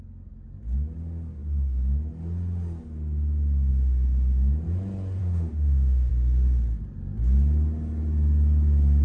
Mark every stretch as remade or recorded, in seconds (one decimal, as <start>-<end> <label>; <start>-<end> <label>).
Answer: 0.0-5.2 recorded; 5.2-6.1 remade; 6.1-9.0 recorded